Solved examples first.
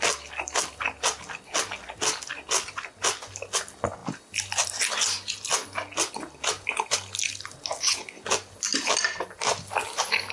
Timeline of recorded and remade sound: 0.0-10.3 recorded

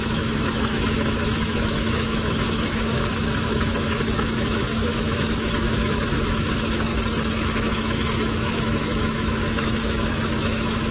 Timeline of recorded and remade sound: 0.0-6.9 remade; 6.9-7.4 recorded; 7.4-10.9 remade

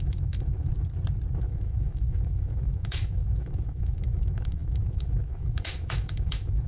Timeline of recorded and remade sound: 0.0-0.7 remade; 0.7-1.4 recorded; 1.4-6.7 remade

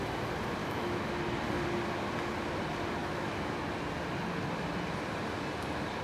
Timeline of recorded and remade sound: 0.0-0.6 recorded; 0.6-1.1 remade; 1.1-3.0 recorded; 3.0-3.5 remade; 3.5-6.0 recorded

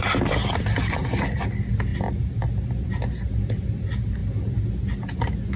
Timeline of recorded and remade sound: 0.0-5.6 recorded